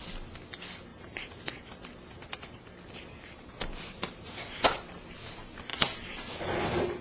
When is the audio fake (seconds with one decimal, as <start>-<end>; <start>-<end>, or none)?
0.9-5.1